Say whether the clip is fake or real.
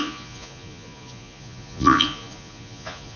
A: fake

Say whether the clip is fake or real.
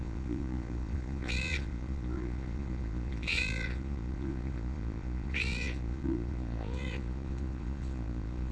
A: fake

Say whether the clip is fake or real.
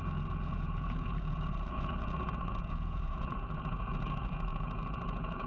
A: fake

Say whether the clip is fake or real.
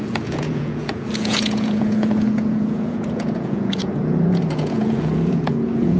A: fake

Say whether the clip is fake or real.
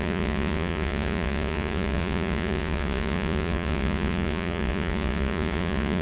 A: fake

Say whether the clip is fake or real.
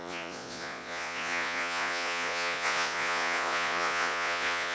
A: fake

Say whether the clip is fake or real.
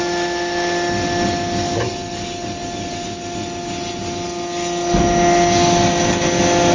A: real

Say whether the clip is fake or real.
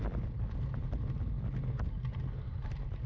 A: real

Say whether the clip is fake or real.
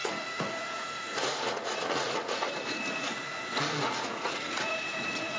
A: fake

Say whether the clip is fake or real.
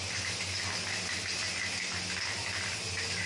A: real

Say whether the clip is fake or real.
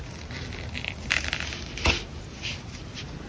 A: real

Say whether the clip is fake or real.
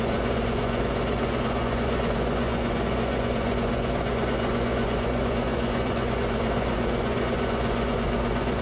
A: fake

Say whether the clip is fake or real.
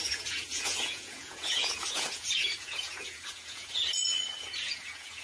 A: fake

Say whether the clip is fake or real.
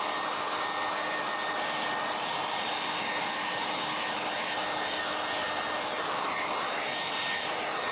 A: real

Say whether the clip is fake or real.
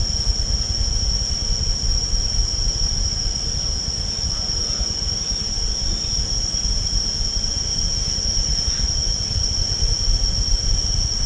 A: real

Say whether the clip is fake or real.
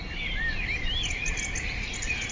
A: real